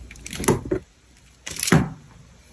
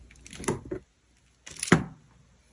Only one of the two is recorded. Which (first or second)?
second